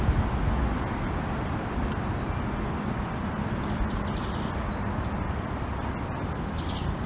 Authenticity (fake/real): real